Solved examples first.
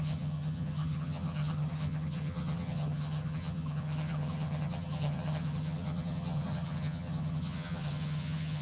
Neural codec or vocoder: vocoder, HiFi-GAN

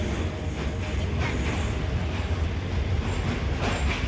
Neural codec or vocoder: none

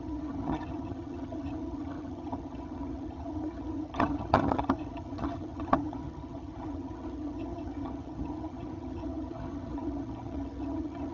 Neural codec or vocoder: vocoder, HiFi-GAN